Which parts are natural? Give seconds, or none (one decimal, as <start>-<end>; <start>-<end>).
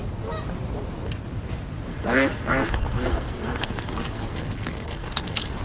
0.0-1.9